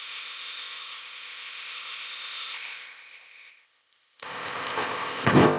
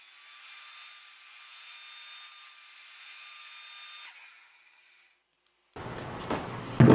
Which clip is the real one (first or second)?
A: second